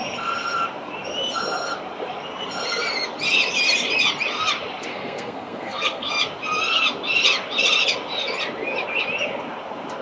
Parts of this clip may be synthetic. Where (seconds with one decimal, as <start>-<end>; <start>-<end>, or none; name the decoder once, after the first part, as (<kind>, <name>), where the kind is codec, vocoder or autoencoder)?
4.9-6.1 (codec, SNAC)